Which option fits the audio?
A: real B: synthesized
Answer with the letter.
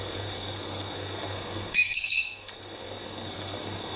B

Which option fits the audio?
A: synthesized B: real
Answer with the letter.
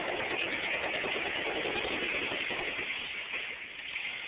B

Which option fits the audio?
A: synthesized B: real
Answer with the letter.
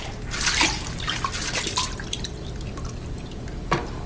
B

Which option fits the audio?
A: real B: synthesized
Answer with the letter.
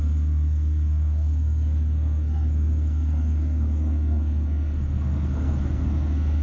B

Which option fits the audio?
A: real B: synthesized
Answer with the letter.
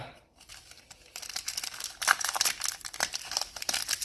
A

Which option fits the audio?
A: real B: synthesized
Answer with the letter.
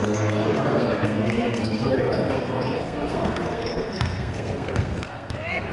B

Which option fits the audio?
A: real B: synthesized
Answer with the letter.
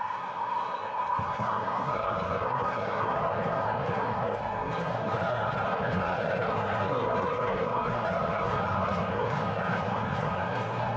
B